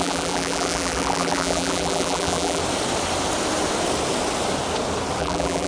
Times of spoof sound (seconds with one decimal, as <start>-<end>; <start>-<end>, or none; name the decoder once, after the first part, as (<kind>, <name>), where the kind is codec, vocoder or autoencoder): 0.0-2.6 (vocoder, BigVGAN v2); 5.2-5.7